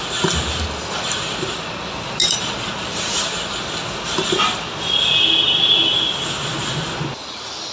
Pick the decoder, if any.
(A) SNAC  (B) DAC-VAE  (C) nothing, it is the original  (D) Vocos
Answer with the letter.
C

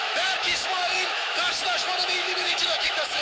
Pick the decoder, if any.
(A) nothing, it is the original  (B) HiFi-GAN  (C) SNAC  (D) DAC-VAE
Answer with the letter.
D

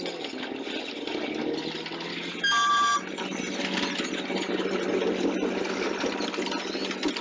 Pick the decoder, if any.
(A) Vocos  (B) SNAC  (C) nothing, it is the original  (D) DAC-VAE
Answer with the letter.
C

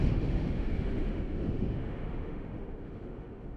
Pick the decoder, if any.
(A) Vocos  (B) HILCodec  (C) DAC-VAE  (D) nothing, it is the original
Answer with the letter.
C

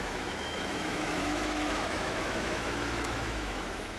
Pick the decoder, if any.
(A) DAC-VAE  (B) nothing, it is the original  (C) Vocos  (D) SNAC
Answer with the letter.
A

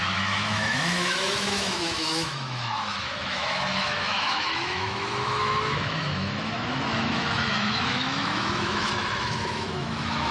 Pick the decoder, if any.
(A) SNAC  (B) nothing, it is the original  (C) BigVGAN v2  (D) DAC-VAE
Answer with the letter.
D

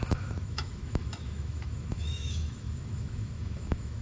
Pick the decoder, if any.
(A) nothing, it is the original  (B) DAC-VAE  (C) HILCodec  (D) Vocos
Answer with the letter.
B